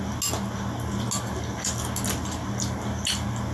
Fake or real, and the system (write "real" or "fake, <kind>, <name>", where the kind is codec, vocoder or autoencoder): real